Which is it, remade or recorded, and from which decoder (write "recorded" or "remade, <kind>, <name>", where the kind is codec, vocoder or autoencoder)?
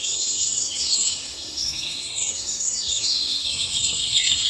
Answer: remade, codec, SNAC